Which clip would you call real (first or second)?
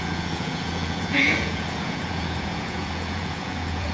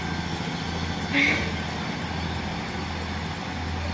second